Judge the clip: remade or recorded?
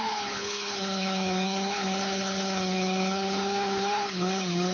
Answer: remade